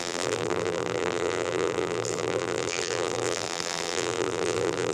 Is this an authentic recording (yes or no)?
no